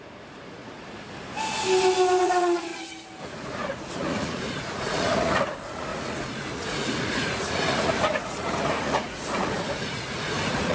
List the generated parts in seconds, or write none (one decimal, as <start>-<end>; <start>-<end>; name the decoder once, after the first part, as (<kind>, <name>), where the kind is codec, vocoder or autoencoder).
0.0-0.6 (vocoder, Vocos); 2.2-2.7; 3.2-10.7

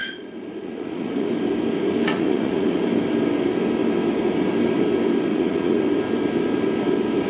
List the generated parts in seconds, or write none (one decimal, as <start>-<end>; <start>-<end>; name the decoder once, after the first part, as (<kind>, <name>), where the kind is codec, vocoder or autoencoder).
0.0-1.3 (vocoder, Vocos); 2.1-2.8; 5.3-5.8

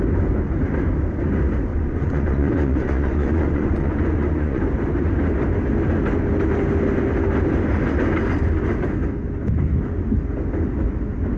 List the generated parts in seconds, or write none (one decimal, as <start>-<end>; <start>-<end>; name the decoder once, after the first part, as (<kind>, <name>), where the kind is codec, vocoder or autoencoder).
1.7-4.6 (vocoder, Vocos)

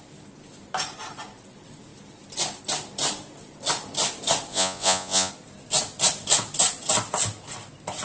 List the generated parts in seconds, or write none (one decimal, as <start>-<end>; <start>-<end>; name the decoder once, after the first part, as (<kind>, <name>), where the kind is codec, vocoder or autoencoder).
4.5-5.3 (vocoder, Vocos)

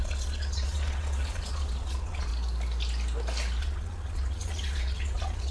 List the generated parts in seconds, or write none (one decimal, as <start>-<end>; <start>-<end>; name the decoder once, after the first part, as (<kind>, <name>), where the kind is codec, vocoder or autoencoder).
0.0-2.3 (vocoder, Vocos); 3.6-5.5

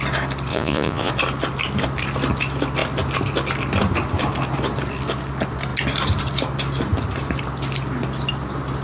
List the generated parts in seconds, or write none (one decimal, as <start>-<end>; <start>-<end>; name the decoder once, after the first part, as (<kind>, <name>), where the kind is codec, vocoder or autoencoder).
0.5-1.1 (vocoder, Vocos)

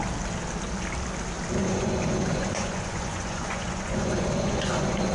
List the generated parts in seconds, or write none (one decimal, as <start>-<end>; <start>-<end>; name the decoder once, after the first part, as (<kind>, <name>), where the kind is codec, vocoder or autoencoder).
1.6-5.1 (vocoder, Vocos)